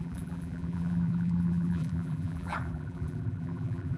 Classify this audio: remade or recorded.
remade